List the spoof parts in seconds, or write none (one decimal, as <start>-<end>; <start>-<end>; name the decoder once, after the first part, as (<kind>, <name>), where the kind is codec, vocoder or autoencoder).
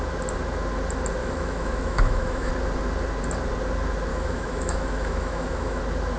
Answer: 1.2-2.5 (autoencoder, DAC-VAE); 4.1-5.8